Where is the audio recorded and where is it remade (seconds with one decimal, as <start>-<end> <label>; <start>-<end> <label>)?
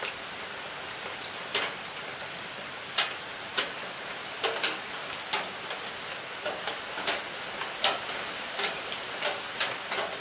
0.0-3.5 remade; 3.5-8.1 recorded; 8.1-10.2 remade